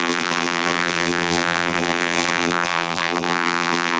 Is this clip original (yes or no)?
no